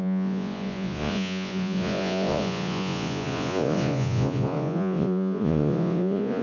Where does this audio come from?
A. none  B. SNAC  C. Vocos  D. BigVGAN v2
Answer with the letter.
C